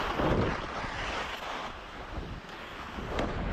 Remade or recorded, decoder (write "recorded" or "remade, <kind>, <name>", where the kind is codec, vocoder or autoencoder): recorded